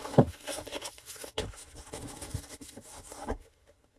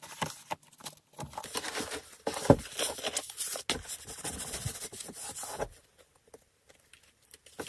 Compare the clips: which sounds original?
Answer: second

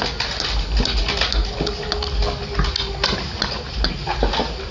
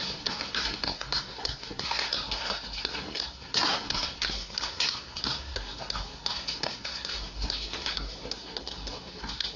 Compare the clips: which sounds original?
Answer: first